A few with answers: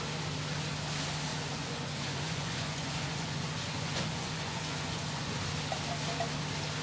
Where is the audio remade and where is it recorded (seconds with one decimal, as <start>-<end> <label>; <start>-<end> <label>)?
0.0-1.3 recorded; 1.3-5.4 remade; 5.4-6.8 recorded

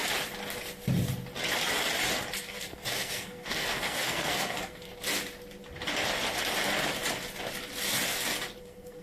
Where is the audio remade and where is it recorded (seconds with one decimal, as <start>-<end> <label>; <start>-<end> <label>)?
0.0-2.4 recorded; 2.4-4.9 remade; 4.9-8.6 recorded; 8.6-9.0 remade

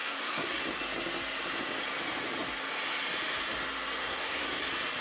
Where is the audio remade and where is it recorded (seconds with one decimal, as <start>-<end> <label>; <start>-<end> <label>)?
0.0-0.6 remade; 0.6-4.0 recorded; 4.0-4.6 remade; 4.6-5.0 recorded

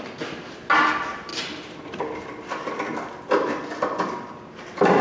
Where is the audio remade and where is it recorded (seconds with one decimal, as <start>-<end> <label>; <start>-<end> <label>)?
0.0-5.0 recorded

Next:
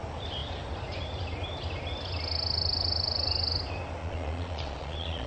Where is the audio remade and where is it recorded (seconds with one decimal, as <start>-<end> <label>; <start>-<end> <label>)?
0.0-4.0 recorded; 4.0-5.3 remade

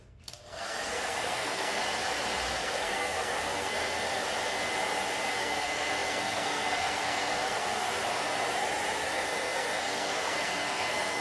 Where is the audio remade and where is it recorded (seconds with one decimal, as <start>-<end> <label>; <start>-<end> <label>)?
0.0-1.8 remade; 1.8-2.5 recorded; 2.5-4.2 remade; 4.2-5.3 recorded; 5.3-8.0 remade; 8.0-9.1 recorded; 9.1-11.2 remade

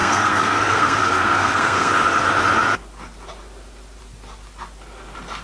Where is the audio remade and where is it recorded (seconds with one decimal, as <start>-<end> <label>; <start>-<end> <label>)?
0.0-1.9 remade; 1.9-5.4 recorded

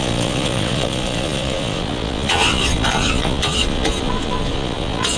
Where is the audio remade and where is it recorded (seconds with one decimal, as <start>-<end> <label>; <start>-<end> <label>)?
0.0-5.2 remade